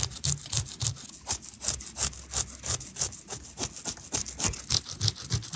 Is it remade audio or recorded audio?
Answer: recorded